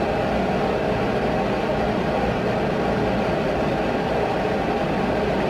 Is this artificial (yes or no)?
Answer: no